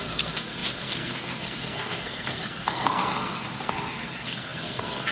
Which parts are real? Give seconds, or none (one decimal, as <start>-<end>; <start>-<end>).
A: none